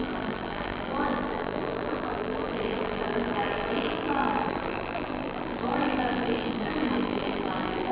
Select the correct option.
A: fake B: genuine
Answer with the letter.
A